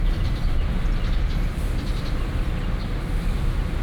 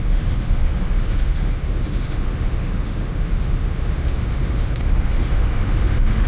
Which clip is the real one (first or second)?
first